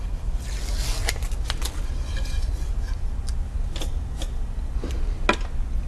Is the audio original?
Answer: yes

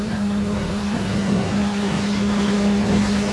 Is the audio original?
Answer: no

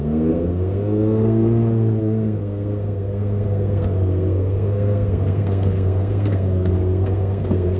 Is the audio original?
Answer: no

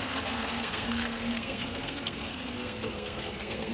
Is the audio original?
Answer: no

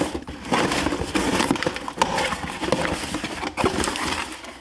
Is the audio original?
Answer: yes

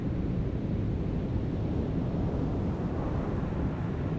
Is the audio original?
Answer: yes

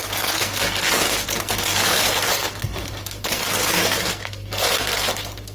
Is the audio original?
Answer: no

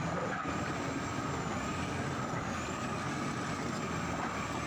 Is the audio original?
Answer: yes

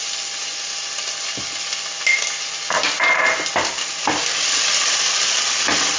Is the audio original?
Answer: yes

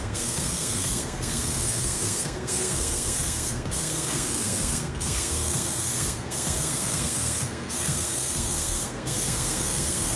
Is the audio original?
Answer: no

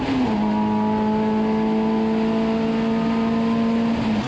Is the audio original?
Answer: yes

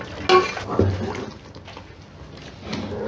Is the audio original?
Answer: yes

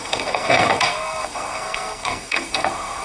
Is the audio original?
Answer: no